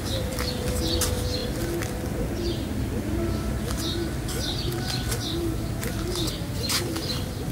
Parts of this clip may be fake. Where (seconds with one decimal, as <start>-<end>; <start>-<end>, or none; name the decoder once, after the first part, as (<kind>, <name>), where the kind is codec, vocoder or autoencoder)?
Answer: none